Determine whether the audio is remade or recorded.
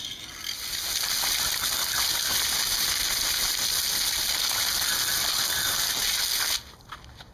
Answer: recorded